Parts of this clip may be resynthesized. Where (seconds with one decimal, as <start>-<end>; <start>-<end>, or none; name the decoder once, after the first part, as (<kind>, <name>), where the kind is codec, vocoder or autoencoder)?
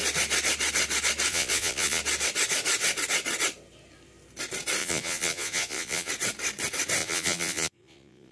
1.3-2.0 (vocoder, Vocos); 4.8-6.1; 7.0-8.3